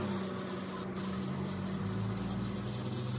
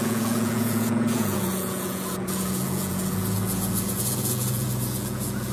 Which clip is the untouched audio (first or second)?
first